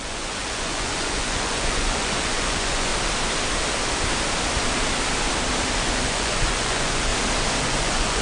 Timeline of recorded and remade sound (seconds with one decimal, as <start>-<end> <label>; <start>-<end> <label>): 0.0-2.9 remade; 2.9-5.8 recorded; 5.8-7.1 remade; 7.1-7.6 recorded; 7.6-8.2 remade